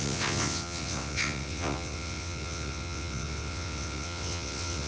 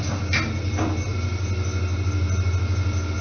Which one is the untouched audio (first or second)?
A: second